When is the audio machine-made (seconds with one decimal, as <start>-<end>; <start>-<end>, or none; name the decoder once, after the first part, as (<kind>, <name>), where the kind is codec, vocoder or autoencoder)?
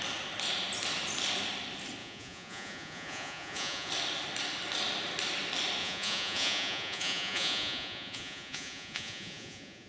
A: 2.0-3.9 (vocoder, Vocos); 5.8-9.9